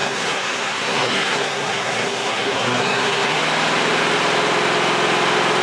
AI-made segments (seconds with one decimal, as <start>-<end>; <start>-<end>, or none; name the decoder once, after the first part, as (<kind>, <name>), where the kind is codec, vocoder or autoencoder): 0.0-3.4 (codec, SNAC)